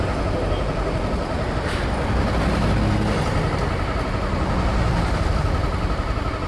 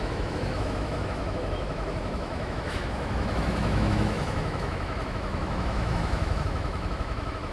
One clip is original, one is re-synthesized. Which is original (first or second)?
first